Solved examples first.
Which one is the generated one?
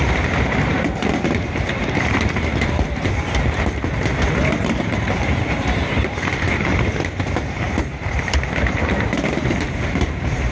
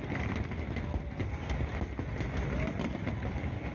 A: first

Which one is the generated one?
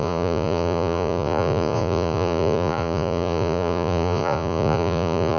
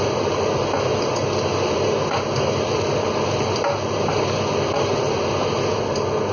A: first